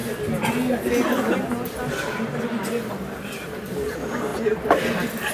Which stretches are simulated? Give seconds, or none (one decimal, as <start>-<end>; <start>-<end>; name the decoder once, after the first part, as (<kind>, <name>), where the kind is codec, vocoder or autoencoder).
none